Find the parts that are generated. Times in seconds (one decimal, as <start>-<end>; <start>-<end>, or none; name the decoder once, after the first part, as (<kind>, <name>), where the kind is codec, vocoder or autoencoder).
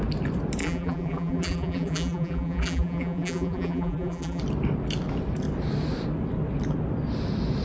0.6-4.4 (vocoder, BigVGAN v2)